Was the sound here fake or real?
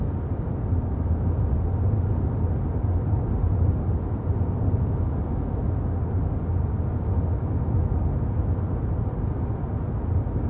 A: real